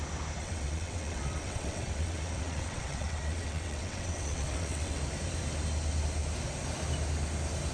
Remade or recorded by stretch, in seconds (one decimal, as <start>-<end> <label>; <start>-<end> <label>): 0.0-0.4 recorded; 0.4-5.0 remade; 5.0-7.7 recorded